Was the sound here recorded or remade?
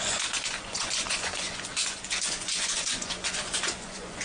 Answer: remade